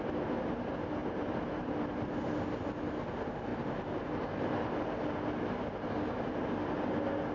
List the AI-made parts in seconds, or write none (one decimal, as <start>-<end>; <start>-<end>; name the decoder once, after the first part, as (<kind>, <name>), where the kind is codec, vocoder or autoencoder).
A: 1.0-1.7 (vocoder, BigVGAN v2); 3.5-4.2